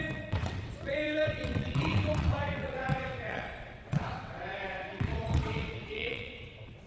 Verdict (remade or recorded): remade